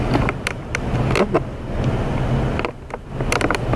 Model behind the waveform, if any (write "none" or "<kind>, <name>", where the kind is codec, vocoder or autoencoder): none